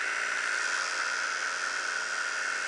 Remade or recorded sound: recorded